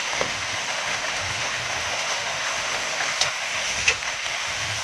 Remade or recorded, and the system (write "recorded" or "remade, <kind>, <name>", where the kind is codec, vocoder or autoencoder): remade, autoencoder, DAC-VAE